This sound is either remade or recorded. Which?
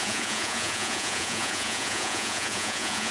remade